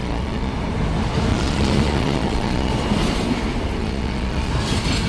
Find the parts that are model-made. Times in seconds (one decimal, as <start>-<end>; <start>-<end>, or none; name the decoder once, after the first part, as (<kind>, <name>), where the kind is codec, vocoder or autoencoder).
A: 0.0-0.5 (vocoder, Vocos); 1.3-2.7; 3.8-4.5